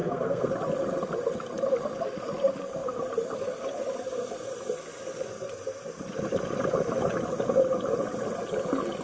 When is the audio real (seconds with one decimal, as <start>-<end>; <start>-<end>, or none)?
0.5-9.0